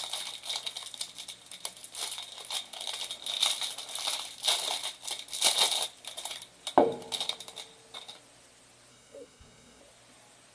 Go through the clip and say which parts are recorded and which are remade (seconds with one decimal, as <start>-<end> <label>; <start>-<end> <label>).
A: 0.0-8.9 recorded; 8.9-9.8 remade; 9.8-10.5 recorded